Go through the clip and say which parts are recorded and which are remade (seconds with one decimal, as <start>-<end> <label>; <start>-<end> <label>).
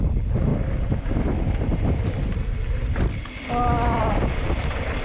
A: 0.0-5.0 recorded